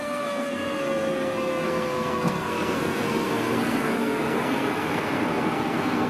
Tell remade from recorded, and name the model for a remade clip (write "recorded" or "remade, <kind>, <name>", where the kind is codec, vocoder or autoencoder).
remade, codec, SNAC